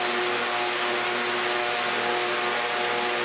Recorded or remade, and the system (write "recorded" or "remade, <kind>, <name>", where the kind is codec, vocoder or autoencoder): recorded